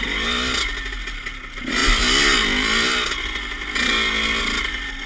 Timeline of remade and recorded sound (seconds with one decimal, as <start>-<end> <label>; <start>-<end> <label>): 0.0-5.1 recorded